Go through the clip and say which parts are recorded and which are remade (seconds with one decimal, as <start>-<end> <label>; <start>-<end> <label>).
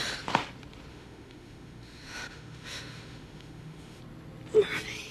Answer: 0.0-0.9 recorded; 0.9-4.0 remade; 4.0-5.1 recorded